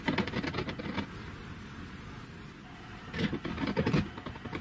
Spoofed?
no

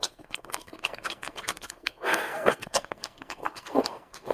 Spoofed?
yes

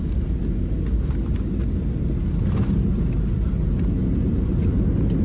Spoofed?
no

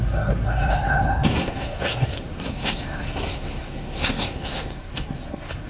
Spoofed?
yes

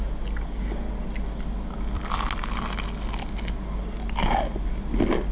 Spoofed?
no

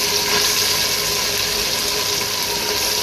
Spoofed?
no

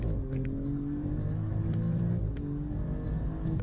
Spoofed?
no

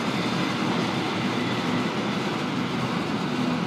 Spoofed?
no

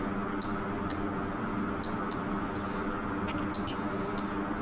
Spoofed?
no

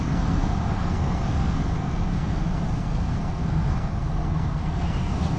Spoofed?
yes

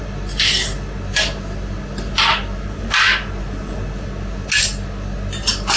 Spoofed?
no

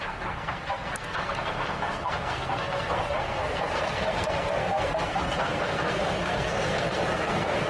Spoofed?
yes